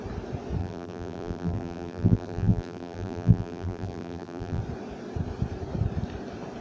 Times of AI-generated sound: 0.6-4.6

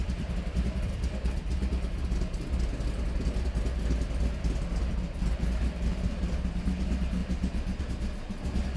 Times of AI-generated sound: 0.0-1.4

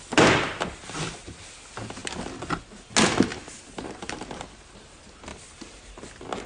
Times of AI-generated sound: 3.3-4.3; 5.3-5.9

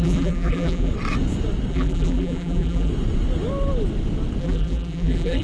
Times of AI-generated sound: 0.0-0.9; 1.7-2.9; 4.4-5.4

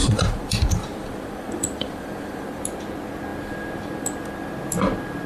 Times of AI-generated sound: 0.0-2.6

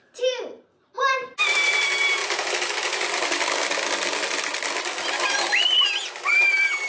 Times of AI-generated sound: 0.0-2.2; 6.3-6.9